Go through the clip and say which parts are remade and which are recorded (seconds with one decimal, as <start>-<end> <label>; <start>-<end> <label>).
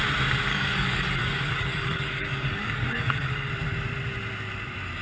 0.0-0.5 recorded; 0.5-3.5 remade; 3.5-5.0 recorded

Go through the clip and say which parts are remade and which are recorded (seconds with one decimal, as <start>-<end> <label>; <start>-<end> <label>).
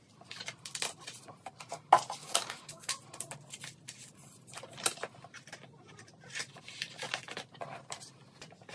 0.0-2.2 recorded; 2.2-2.9 remade; 2.9-8.7 recorded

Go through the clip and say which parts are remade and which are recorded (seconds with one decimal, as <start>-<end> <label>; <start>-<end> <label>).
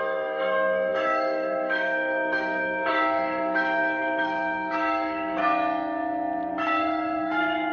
0.0-5.4 remade; 5.4-6.5 recorded; 6.5-7.7 remade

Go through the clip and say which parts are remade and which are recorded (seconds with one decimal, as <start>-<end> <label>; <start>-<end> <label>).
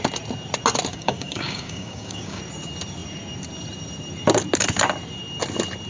0.0-0.9 recorded; 0.9-2.4 remade; 2.4-5.9 recorded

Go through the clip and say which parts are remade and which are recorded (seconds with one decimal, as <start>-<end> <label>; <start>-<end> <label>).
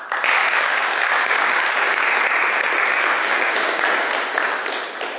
0.0-0.4 recorded; 0.4-2.2 remade; 2.2-2.9 recorded; 2.9-3.8 remade; 3.8-5.2 recorded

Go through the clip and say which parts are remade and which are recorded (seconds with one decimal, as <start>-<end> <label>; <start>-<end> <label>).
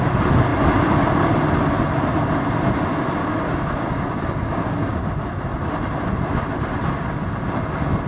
0.0-3.2 recorded; 3.2-4.9 remade; 4.9-8.1 recorded